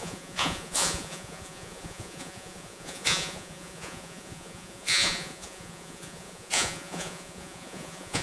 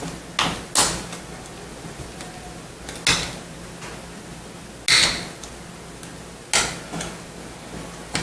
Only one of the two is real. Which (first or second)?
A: second